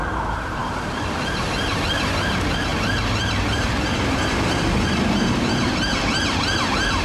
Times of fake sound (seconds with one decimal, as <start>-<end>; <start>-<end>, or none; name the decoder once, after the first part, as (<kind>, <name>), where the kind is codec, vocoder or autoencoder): 0.6-1.8 (vocoder, BigVGAN v2); 2.7-7.0